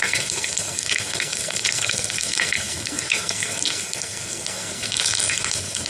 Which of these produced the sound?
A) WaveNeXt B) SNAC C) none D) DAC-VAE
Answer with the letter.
B